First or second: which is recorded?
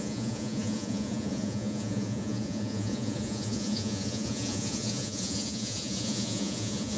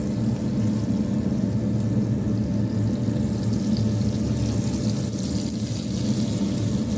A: second